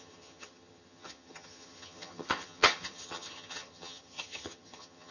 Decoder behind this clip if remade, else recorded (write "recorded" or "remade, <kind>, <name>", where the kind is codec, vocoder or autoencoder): remade, vocoder, HiFi-GAN